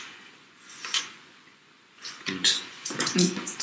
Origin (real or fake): fake